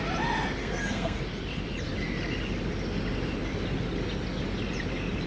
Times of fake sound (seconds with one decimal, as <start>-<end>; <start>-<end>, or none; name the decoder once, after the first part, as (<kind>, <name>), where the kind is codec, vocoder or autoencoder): 0.6-1.2 (codec, SNAC)